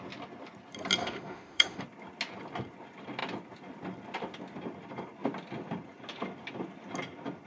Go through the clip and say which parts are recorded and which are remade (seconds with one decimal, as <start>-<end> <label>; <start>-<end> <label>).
0.0-1.0 recorded; 1.0-1.8 remade; 1.8-7.5 recorded